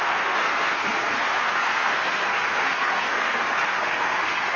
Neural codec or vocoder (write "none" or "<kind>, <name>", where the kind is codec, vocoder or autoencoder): codec, SNAC